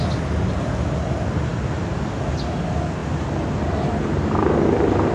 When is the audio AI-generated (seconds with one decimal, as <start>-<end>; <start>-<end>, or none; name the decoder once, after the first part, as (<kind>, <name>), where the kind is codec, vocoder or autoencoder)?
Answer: none